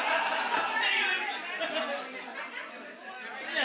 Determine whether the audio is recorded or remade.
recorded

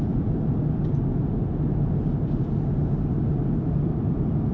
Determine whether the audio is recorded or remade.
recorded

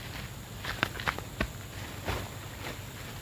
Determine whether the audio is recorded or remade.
recorded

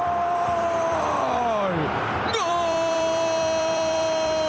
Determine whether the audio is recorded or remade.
remade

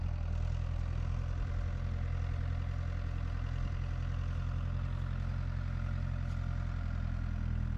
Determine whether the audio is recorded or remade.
recorded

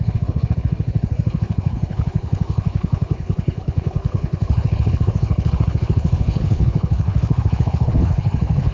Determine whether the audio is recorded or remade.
remade